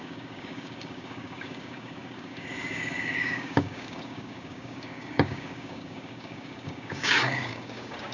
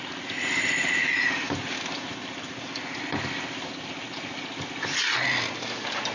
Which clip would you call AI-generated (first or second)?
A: first